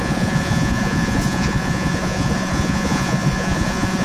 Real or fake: fake